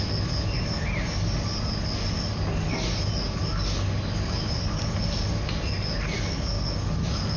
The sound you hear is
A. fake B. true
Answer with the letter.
B